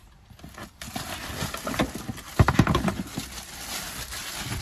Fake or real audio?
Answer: real